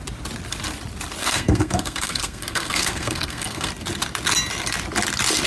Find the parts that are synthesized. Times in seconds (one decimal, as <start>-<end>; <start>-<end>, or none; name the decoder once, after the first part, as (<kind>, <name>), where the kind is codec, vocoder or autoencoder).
1.2-3.7 (codec, SNAC)